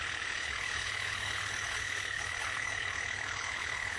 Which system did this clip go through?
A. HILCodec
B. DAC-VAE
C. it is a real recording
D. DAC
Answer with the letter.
A